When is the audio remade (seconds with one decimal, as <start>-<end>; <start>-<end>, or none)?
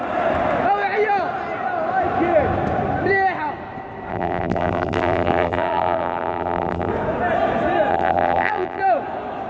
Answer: 4.1-6.9; 7.9-8.8